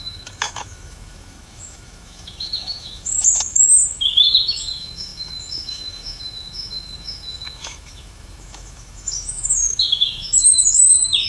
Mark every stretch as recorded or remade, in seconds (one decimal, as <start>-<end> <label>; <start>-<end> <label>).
0.0-11.3 remade